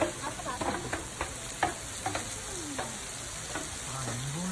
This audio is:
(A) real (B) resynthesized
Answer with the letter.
A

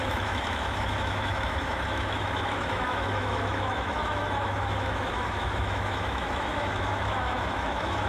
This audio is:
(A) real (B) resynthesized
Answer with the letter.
B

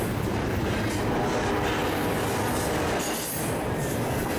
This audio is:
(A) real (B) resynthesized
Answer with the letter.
A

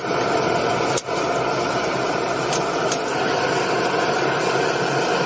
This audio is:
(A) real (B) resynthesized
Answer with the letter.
A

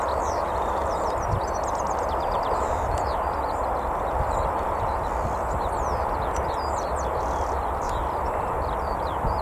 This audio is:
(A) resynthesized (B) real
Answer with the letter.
B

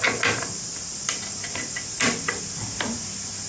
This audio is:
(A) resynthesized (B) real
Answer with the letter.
B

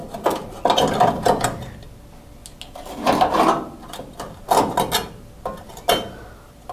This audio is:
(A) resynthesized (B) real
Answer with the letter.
B